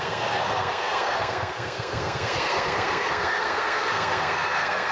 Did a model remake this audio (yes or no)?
yes